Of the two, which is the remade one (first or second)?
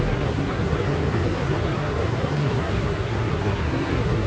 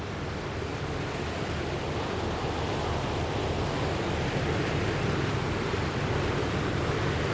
first